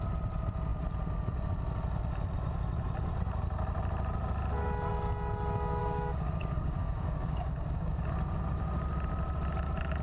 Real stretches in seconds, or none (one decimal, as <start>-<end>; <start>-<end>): 0.0-5.8; 8.1-10.0